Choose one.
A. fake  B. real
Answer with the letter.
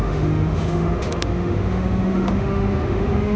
A